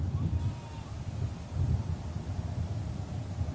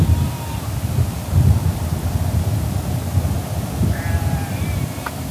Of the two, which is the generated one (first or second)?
second